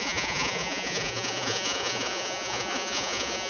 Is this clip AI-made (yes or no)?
yes